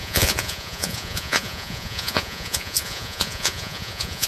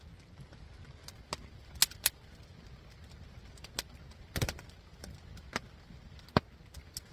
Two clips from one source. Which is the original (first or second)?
second